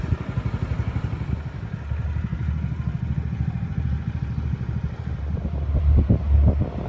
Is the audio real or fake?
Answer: real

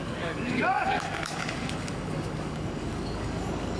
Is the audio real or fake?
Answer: fake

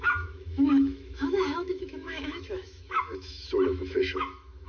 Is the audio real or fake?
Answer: fake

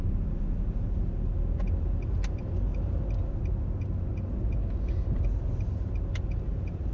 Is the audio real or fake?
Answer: real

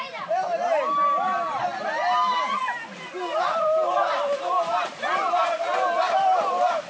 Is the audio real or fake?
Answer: real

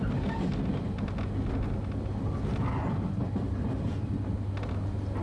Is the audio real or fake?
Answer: real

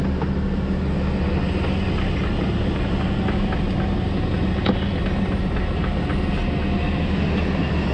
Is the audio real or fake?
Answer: real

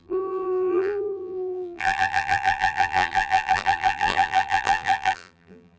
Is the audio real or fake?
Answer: fake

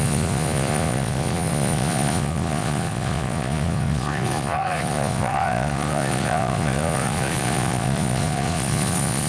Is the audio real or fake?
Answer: fake